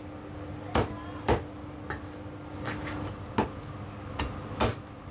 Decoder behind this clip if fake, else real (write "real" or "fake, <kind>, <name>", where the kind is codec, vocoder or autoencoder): real